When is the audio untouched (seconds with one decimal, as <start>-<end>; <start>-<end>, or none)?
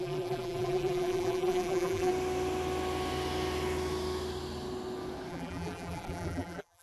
2.1-5.3